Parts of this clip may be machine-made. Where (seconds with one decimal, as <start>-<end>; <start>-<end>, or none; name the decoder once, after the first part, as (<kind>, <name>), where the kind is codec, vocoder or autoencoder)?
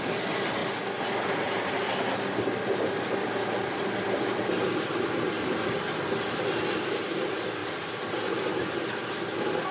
none